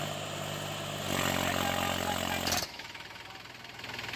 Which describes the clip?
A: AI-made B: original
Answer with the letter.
B